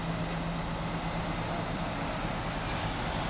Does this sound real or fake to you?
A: real